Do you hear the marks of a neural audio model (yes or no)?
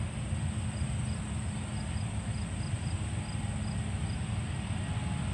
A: no